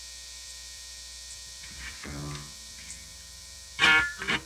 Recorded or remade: remade